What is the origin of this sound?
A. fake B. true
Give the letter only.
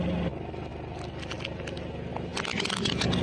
B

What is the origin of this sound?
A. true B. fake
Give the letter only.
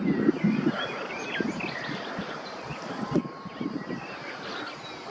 A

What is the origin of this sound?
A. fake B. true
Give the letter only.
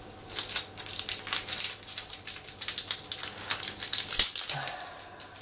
B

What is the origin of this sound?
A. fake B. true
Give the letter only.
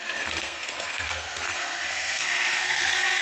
A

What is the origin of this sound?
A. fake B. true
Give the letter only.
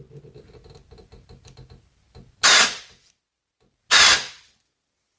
B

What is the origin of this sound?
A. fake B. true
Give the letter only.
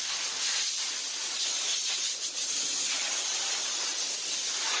B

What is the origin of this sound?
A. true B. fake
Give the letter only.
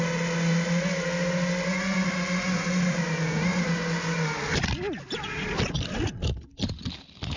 A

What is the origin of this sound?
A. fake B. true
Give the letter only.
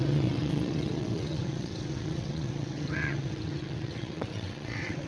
A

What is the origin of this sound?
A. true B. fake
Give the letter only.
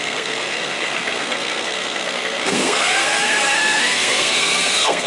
B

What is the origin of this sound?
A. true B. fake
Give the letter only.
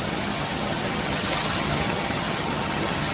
B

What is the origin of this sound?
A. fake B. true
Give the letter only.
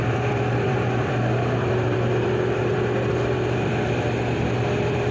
A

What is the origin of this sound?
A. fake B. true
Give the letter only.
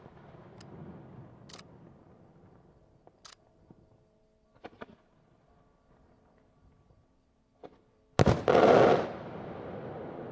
B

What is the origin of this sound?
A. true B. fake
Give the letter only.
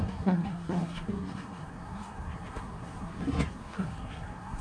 B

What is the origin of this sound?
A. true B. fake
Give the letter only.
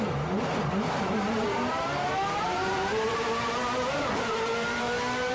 B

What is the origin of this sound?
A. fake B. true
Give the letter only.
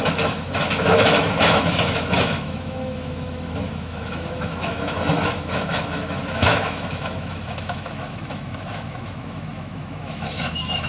A